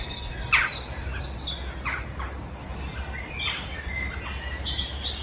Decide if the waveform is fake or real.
real